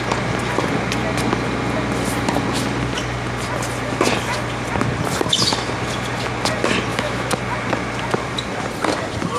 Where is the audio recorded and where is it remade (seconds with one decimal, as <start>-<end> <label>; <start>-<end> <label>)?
0.0-6.9 recorded; 6.9-7.4 remade; 7.4-9.4 recorded